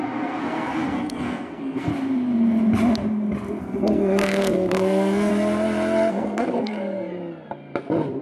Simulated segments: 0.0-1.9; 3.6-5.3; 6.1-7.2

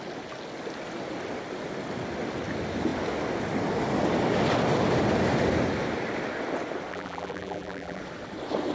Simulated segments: 6.9-8.0

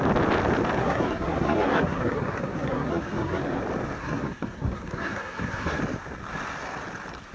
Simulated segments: 0.8-3.6; 4.0-5.8